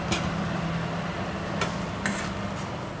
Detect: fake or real real